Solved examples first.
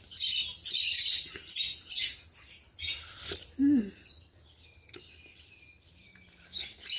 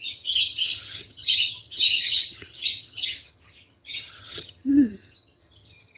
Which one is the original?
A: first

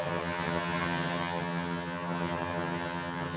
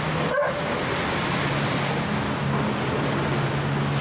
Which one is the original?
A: second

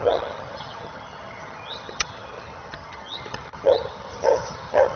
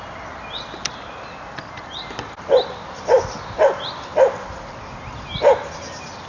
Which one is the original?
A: second